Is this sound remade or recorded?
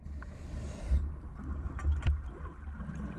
recorded